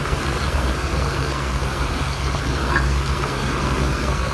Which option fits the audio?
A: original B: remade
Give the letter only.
B